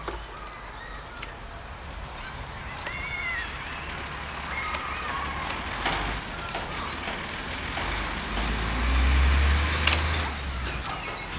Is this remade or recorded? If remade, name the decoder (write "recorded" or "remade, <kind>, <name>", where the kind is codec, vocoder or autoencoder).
recorded